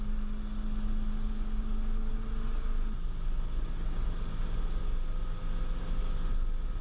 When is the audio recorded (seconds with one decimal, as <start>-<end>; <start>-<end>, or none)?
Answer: 0.0-6.8